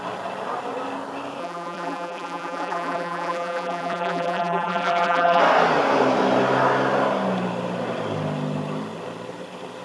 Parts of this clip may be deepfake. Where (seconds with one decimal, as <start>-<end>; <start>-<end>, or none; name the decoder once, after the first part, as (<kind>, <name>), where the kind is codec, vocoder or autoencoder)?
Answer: 1.4-5.4 (vocoder, BigVGAN v2)